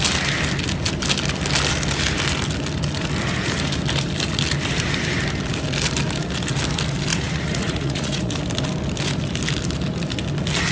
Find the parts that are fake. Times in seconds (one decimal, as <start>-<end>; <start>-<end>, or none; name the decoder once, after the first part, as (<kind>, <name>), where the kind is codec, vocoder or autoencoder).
7.1-8.3 (vocoder, Vocos)

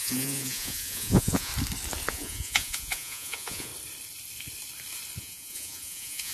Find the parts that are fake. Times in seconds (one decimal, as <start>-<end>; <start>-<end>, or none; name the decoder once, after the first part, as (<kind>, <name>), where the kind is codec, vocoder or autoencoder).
0.0-1.5 (vocoder, Vocos); 2.1-3.7; 5.2-6.3

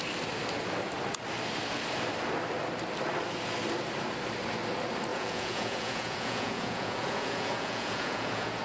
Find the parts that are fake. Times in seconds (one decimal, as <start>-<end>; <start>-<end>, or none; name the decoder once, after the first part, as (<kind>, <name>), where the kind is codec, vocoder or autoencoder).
5.1-8.6 (vocoder, Vocos)

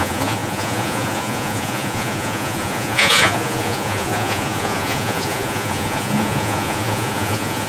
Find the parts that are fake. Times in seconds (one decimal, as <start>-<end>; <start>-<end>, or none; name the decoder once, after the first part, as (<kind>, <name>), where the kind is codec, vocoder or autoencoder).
0.0-7.7 (vocoder, Vocos)

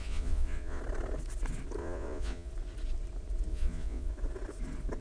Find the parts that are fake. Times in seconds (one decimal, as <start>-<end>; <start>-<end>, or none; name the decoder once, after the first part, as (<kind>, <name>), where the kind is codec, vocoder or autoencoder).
0.0-0.8 (vocoder, Vocos); 1.8-2.5; 3.5-4.1